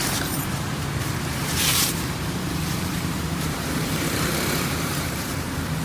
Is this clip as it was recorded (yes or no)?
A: no